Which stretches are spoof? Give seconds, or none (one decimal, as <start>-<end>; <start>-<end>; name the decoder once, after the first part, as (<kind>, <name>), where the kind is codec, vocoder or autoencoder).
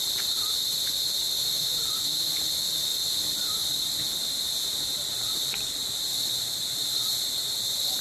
2.9-8.0 (vocoder, BigVGAN v2)